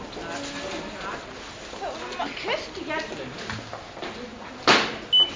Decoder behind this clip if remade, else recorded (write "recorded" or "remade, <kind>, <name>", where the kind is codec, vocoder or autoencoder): recorded